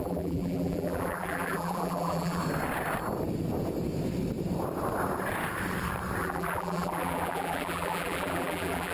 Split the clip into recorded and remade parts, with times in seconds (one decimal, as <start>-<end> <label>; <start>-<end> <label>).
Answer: 0.0-2.4 remade; 2.4-6.2 recorded; 6.2-8.9 remade